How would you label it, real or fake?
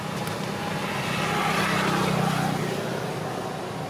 real